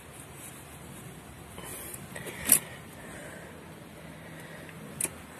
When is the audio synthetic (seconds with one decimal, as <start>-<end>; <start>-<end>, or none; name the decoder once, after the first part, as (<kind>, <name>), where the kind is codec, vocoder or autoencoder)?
none